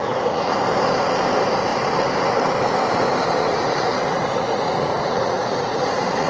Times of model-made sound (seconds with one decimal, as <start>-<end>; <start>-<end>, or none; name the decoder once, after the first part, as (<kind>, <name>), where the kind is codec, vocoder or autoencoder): 0.0-0.5 (vocoder, Vocos); 3.4-6.3